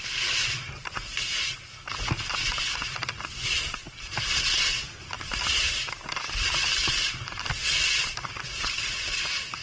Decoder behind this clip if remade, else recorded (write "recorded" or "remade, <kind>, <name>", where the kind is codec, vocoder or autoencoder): recorded